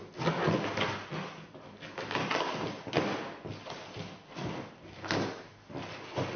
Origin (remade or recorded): recorded